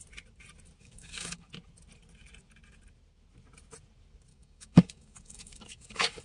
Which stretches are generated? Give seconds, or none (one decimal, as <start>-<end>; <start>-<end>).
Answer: 0.8-1.5; 4.3-6.2